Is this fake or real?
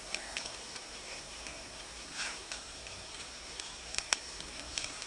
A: fake